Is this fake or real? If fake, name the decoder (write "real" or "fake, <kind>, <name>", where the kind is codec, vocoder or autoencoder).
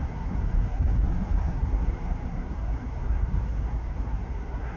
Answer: fake, codec, SNAC